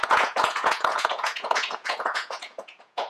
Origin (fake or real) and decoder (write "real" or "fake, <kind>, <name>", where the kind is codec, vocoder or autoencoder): fake, vocoder, Vocos